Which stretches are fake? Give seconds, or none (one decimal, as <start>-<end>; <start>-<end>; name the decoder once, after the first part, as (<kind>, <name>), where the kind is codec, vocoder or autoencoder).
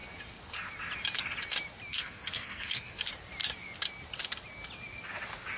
1.9-3.0 (codec, SNAC)